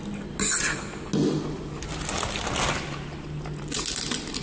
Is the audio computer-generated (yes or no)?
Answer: no